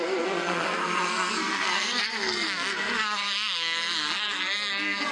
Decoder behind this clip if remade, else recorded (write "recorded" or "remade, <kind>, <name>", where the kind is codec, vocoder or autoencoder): remade, codec, SNAC